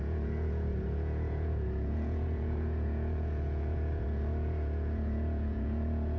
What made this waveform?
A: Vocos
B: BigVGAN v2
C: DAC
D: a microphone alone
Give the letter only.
A